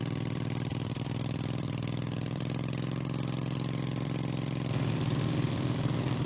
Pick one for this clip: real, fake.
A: fake